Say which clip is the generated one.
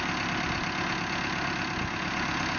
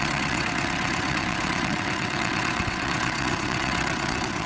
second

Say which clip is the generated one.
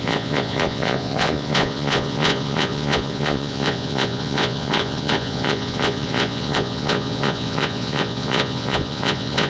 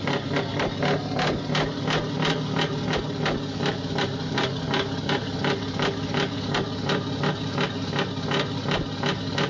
first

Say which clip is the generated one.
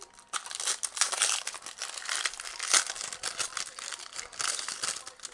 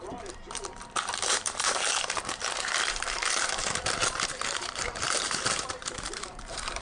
second